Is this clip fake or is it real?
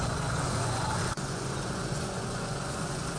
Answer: fake